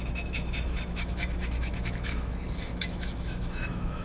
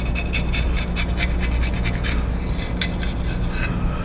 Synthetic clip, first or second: first